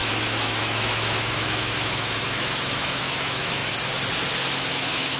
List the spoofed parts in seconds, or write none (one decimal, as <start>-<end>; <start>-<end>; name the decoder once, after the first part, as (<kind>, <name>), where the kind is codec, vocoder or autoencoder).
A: 0.0-3.6 (autoencoder, DAC-VAE); 4.7-5.2